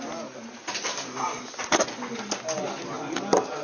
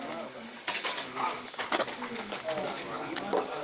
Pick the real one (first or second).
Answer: first